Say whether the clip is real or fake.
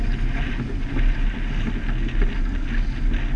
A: real